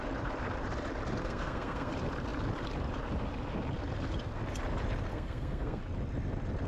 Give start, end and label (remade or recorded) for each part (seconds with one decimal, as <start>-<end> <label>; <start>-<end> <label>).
0.0-1.2 recorded; 1.2-1.9 remade; 1.9-5.1 recorded; 5.1-5.8 remade; 5.8-6.7 recorded